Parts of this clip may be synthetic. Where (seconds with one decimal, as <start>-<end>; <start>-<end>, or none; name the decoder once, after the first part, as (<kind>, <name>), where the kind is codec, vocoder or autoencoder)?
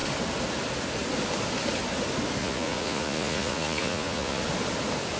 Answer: 2.4-4.4 (vocoder, Vocos)